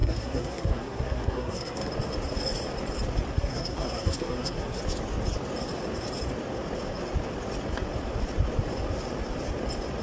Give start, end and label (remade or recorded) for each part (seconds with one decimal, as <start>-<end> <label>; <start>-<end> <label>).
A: 0.0-1.9 remade; 1.9-3.3 recorded; 3.3-4.8 remade; 4.8-10.0 recorded